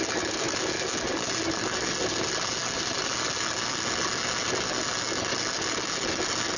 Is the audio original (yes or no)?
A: yes